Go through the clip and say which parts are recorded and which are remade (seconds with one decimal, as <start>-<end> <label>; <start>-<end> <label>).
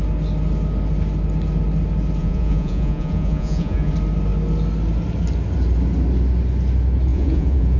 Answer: 0.0-2.2 recorded; 2.2-3.9 remade; 3.9-7.1 recorded; 7.1-7.8 remade